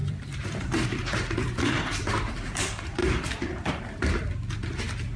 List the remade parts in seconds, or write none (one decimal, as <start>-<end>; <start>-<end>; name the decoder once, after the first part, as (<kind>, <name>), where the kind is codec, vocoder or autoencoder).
0.0-5.2 (vocoder, BigVGAN v2)